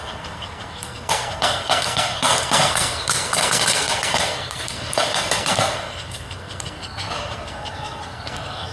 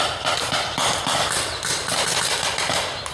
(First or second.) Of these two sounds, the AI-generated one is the first